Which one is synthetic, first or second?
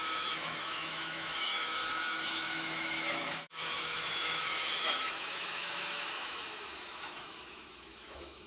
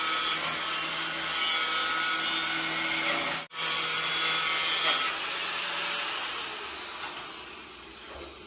first